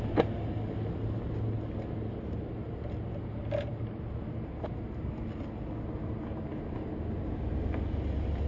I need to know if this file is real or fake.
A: real